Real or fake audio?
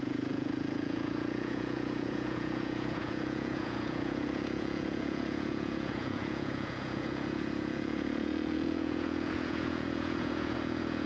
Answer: fake